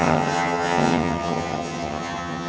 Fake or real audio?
fake